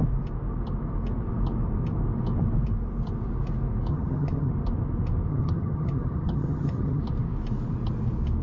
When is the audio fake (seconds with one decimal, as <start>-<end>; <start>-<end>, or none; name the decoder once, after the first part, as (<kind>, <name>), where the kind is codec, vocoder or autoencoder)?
3.9-4.5 (vocoder, HiFi-GAN); 5.3-7.0

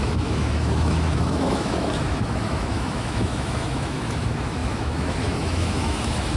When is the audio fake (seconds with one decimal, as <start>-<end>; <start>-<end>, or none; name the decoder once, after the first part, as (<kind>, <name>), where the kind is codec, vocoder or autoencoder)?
0.0-6.4 (autoencoder, DAC-VAE)

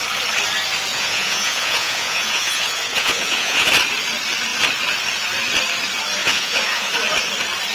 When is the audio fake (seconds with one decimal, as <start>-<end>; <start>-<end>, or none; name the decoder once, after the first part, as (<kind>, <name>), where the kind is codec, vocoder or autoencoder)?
0.9-3.7 (vocoder, Vocos); 6.2-6.9

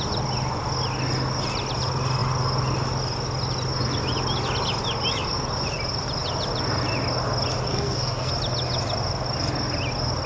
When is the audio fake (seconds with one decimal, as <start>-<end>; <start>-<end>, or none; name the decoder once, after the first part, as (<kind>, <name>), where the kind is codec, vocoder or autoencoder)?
7.7-8.3 (codec, SNAC)

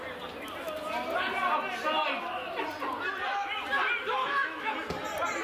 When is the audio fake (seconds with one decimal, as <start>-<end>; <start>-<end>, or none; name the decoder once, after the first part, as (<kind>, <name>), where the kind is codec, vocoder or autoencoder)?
4.2-4.7 (autoencoder, DAC-VAE)

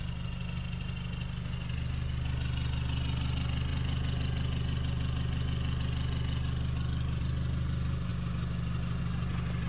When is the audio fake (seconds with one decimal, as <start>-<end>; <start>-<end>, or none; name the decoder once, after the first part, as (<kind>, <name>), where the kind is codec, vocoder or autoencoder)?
none

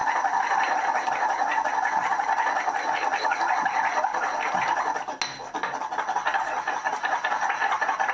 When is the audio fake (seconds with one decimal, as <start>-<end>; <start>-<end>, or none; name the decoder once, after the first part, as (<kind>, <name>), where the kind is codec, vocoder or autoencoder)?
none

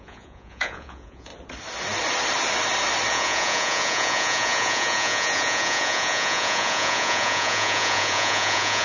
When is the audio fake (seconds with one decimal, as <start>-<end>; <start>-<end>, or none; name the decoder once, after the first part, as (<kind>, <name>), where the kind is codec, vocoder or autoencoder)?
0.0-1.3 (vocoder, Vocos); 3.1-8.8